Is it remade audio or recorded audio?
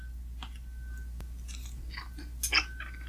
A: recorded